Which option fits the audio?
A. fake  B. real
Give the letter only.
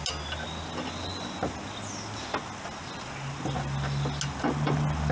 B